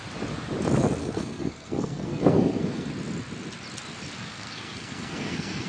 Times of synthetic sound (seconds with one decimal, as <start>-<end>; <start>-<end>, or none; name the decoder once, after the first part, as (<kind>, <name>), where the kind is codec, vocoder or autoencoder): 1.0-2.9 (codec, SNAC); 4.2-5.7